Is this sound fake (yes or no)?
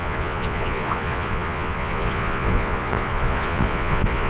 yes